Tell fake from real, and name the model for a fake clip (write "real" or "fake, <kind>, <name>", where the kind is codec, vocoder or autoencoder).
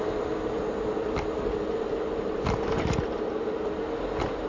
real